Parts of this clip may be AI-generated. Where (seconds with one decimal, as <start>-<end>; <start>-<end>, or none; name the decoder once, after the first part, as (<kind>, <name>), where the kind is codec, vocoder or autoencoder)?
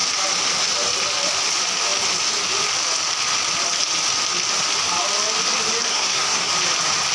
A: 5.9-6.5 (codec, SNAC)